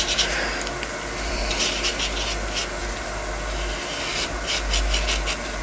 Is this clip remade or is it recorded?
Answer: recorded